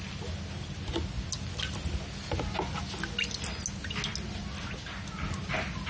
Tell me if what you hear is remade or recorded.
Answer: recorded